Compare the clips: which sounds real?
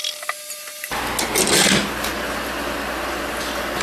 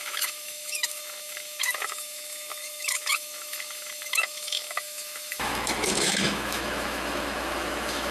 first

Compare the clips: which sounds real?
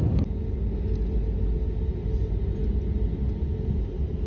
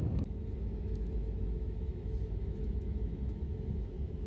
first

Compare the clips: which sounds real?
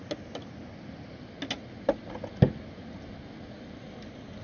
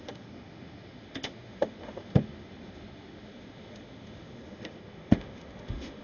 first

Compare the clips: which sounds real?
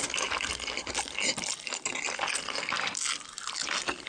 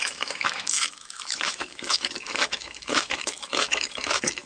first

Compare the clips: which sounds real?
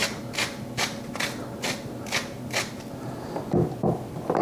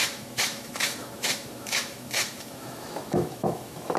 first